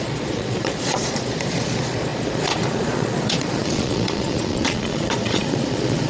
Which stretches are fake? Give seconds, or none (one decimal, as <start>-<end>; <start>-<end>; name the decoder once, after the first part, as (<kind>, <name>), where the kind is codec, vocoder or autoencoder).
0.0-6.1 (vocoder, Vocos)